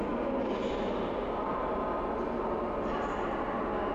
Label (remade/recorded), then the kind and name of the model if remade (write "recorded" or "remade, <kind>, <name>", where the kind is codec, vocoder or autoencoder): recorded